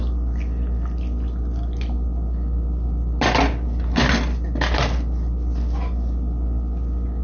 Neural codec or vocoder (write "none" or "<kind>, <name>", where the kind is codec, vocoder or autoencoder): none